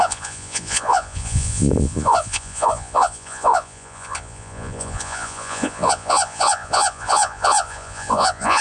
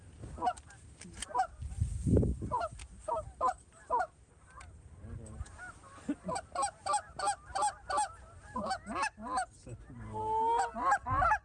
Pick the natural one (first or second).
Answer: second